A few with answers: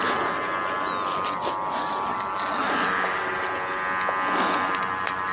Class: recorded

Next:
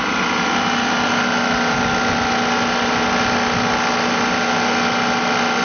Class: recorded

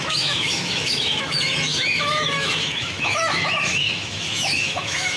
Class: remade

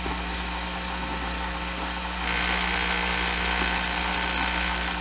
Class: recorded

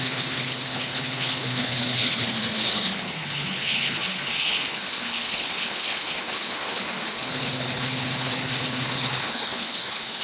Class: remade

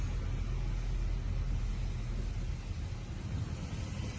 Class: recorded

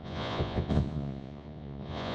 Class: remade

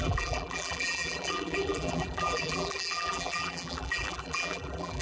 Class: remade